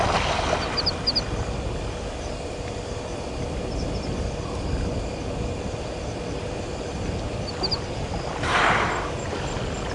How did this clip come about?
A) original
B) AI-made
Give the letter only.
A